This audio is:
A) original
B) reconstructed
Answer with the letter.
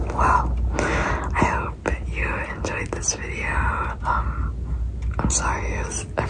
A